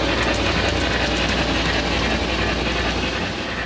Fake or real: real